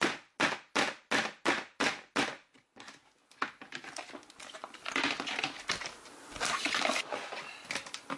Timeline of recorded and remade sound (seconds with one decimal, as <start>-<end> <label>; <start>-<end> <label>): 0.0-8.2 recorded